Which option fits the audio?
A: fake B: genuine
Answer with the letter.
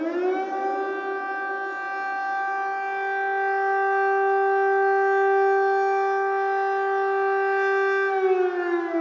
B